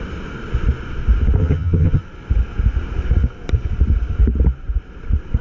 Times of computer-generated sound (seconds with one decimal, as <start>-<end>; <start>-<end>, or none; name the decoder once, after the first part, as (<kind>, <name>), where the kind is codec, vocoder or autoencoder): 1.4-2.0 (vocoder, HiFi-GAN)